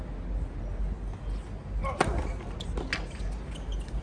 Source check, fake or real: real